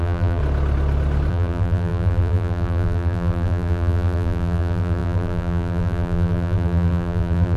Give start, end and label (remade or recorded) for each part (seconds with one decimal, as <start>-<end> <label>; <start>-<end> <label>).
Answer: 0.0-0.4 remade; 0.4-1.3 recorded; 1.3-7.6 remade